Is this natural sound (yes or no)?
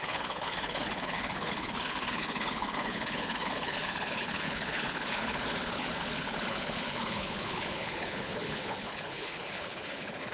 no